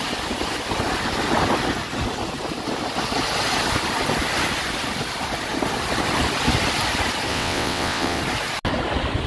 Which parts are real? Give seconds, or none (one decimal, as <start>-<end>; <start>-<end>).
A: 0.0-7.3; 8.2-9.3